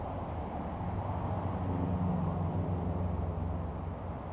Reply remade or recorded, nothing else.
recorded